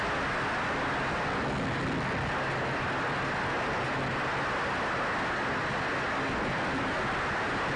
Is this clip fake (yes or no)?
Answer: no